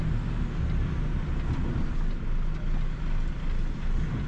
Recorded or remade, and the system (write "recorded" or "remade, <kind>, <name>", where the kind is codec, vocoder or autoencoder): recorded